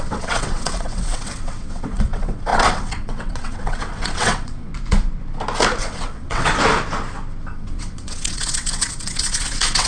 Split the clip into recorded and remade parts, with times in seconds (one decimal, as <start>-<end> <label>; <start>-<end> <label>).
0.0-4.7 remade; 4.7-5.8 recorded; 5.8-6.5 remade; 6.5-7.5 recorded; 7.5-9.9 remade